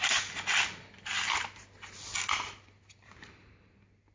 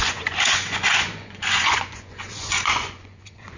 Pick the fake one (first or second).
second